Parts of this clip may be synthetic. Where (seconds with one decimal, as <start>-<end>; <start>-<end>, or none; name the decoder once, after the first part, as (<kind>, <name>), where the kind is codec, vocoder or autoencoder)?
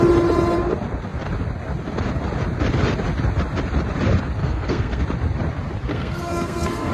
4.4-5.0 (codec, SNAC); 5.9-6.9